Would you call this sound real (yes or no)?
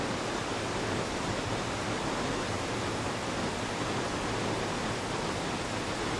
yes